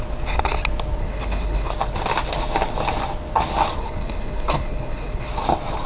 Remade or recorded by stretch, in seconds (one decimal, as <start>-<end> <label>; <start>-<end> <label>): 0.0-1.0 recorded; 1.0-1.7 remade; 1.7-3.8 recorded; 3.8-5.3 remade; 5.3-5.9 recorded